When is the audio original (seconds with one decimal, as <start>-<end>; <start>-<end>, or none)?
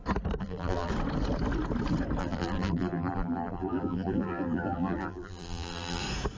0.0-0.4; 0.9-2.2; 6.0-6.4